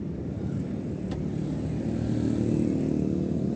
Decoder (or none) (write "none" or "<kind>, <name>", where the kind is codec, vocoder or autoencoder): none